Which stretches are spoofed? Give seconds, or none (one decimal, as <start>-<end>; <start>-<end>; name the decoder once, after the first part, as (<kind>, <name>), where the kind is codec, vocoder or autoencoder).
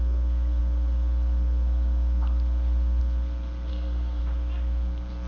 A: 3.7-4.2 (codec, SNAC)